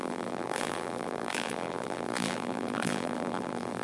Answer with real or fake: fake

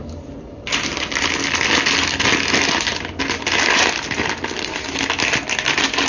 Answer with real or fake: real